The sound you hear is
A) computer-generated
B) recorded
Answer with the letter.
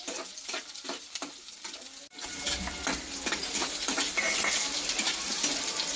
B